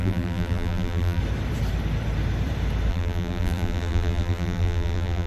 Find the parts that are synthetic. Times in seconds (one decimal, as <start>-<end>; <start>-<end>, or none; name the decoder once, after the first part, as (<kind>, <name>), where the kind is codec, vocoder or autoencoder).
0.0-1.2 (vocoder, BigVGAN v2); 2.9-5.3